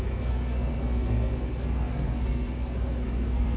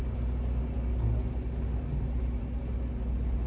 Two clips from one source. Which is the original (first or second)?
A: second